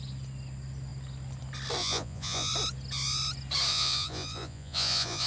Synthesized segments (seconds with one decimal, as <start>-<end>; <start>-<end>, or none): 1.8-2.5; 3.7-5.3